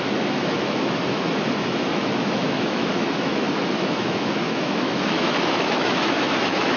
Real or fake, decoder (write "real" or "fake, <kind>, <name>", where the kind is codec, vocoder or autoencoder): fake, autoencoder, DAC-VAE